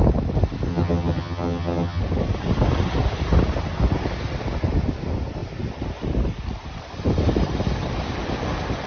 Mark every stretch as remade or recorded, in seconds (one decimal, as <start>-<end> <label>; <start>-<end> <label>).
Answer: 0.0-0.7 recorded; 0.7-2.0 remade; 2.0-8.9 recorded